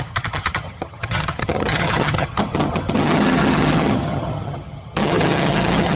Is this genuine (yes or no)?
no